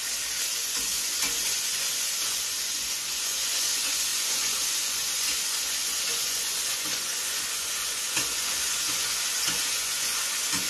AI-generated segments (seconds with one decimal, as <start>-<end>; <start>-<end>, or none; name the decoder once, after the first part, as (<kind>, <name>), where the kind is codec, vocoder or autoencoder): 0.5-10.7 (vocoder, Vocos)